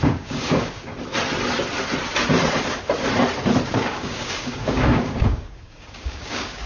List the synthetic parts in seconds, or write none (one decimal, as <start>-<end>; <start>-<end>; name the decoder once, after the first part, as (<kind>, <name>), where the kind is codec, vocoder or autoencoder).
0.0-0.9 (codec, DAC); 3.7-6.7